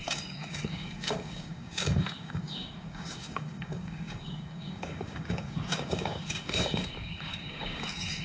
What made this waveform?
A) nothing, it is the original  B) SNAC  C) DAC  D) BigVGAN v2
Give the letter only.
C